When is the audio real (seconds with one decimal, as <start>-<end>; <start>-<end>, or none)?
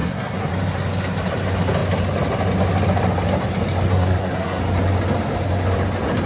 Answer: 0.5-3.9; 4.6-6.3